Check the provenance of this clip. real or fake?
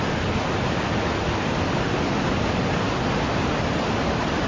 real